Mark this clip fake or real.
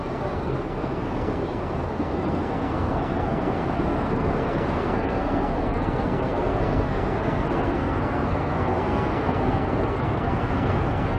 fake